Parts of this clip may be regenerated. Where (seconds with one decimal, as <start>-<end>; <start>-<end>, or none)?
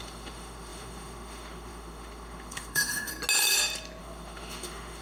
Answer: 0.0-3.1; 4.0-5.0